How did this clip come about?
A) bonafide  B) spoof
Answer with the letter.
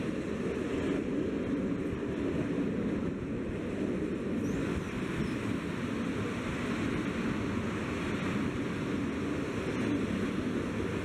A